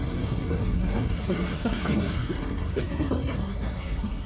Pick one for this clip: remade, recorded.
remade